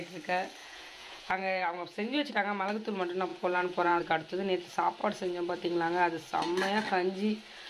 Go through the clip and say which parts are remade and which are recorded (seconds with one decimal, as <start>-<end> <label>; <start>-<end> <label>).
0.0-0.6 recorded; 0.6-2.3 remade; 2.3-3.3 recorded; 3.3-4.0 remade; 4.0-7.7 recorded